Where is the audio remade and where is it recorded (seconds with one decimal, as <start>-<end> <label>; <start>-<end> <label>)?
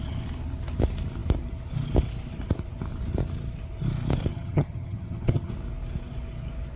0.0-4.3 recorded; 4.3-5.5 remade; 5.5-6.8 recorded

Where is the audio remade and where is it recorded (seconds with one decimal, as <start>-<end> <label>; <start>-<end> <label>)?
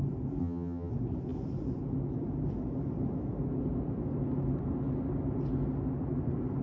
0.0-0.4 recorded; 0.4-0.9 remade; 0.9-6.6 recorded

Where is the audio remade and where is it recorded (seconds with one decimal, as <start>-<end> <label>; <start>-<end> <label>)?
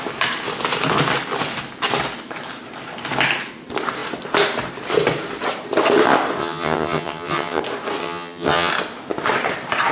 0.0-6.4 recorded; 6.4-7.6 remade; 7.6-8.0 recorded; 8.0-8.7 remade; 8.7-9.9 recorded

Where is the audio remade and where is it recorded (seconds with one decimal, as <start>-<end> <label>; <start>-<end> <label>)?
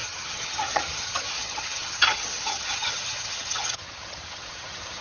0.0-5.0 remade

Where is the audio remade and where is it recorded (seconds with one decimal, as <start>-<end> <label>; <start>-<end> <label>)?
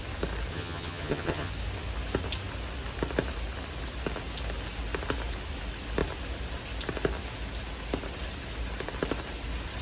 0.0-0.5 recorded; 0.5-1.5 remade; 1.5-9.8 recorded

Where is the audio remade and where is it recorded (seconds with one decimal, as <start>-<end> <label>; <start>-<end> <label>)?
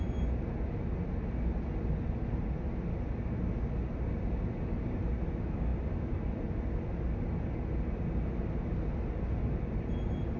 0.0-10.4 recorded